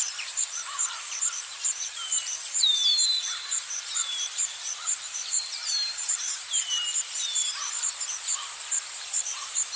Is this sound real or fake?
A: fake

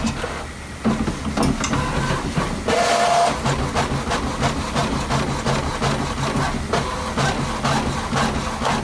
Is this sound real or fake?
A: real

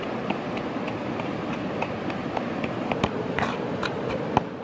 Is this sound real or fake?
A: fake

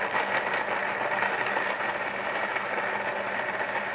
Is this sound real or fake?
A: real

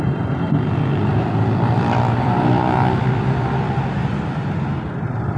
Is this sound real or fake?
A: fake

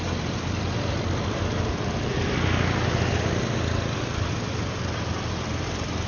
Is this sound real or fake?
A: fake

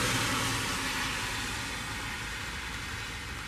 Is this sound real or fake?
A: real